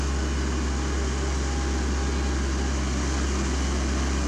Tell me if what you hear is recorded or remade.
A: recorded